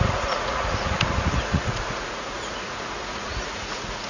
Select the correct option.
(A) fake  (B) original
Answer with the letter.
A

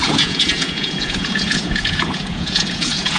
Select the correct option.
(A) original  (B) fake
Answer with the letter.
B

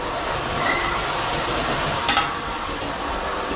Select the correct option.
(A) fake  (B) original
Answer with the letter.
B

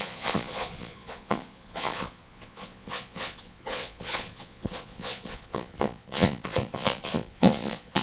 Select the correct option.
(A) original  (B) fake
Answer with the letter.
B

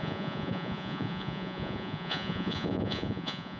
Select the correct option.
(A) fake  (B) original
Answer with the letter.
A